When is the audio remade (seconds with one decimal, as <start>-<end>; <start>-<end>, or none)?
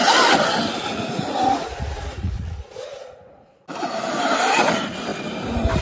0.9-3.6